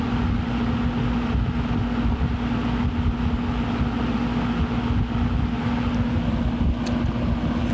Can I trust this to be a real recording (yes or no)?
yes